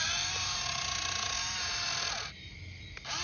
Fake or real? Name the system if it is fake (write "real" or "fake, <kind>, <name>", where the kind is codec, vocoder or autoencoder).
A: real